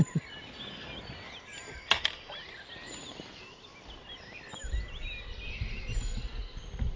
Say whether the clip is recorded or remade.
recorded